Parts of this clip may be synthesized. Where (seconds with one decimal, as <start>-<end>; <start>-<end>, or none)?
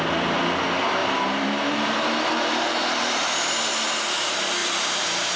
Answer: 1.0-3.5; 4.6-5.4